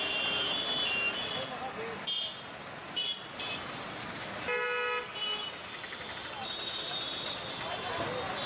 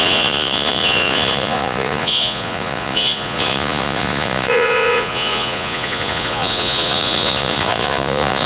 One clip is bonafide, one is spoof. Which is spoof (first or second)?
second